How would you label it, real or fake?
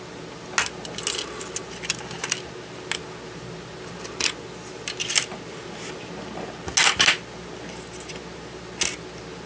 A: real